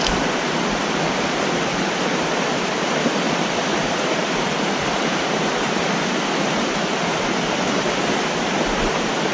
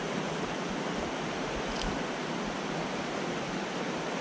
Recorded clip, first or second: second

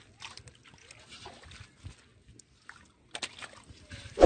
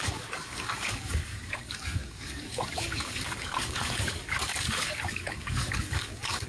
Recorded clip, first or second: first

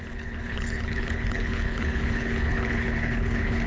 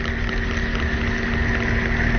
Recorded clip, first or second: second